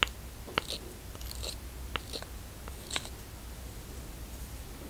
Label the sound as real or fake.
real